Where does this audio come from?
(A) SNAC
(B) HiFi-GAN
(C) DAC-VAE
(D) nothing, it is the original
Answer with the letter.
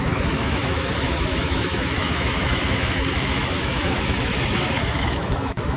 C